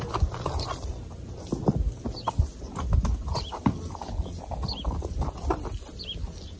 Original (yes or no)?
yes